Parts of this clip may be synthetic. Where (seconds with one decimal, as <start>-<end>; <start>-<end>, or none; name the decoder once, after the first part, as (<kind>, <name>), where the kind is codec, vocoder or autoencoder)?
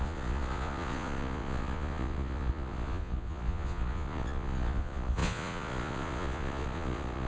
0.0-7.3 (vocoder, Vocos)